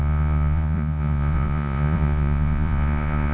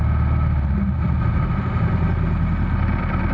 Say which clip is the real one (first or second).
second